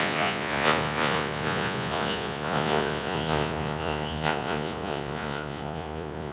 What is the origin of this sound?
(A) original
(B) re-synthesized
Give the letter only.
B